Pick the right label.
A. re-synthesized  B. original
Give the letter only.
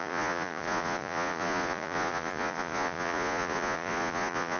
A